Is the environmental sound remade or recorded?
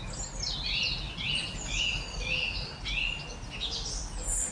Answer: recorded